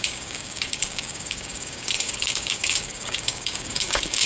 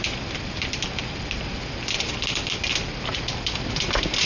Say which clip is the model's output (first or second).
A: first